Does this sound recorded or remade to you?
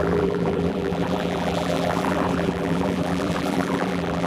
remade